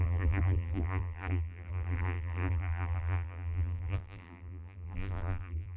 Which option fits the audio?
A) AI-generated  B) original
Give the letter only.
A